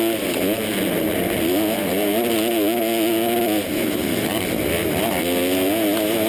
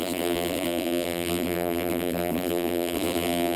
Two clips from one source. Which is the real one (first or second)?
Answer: first